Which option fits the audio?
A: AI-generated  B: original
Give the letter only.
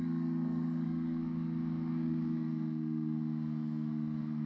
A